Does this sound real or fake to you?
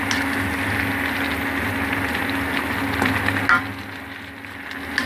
real